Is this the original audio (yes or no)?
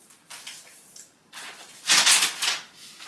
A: yes